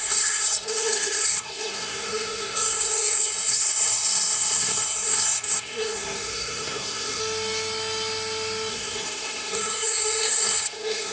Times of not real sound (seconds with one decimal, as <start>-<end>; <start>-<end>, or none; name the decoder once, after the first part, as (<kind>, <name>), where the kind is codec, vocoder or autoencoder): 0.0-7.2 (codec, SNAC); 8.7-11.1